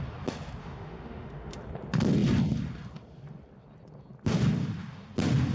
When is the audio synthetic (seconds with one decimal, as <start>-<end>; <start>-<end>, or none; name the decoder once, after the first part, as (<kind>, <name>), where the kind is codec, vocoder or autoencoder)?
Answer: 0.6-1.6 (autoencoder, DAC-VAE)